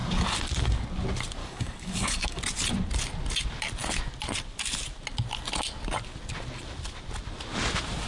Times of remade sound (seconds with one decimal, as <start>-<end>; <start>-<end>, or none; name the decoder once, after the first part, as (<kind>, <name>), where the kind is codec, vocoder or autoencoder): 1.4-2.4 (codec, DAC)